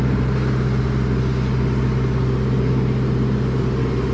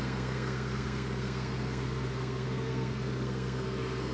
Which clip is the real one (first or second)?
first